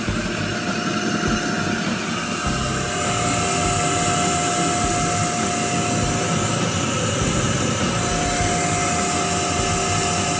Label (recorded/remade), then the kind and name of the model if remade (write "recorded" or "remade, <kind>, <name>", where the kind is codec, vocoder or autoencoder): recorded